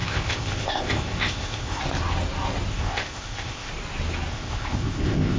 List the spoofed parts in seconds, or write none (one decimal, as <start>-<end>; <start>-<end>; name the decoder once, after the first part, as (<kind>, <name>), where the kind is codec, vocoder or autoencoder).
0.0-1.8 (codec, ZipCodec); 2.7-3.7; 4.3-5.4